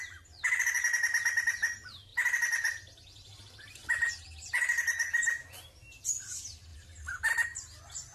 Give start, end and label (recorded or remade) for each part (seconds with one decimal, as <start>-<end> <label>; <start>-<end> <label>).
0.0-8.1 recorded